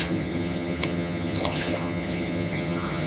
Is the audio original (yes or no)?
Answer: no